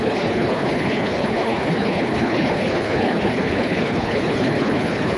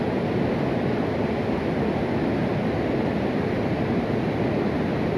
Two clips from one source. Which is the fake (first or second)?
first